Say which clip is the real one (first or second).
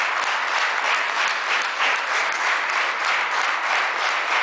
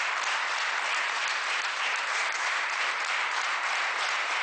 first